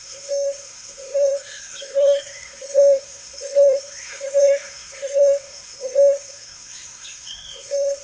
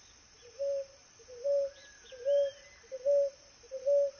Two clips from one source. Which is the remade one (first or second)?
first